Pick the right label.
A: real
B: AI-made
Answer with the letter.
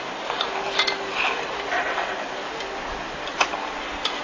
B